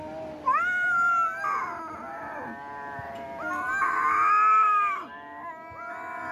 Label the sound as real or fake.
real